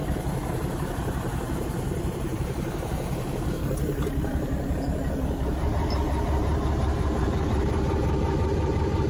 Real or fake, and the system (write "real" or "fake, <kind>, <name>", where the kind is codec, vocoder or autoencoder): fake, vocoder, BigVGAN v2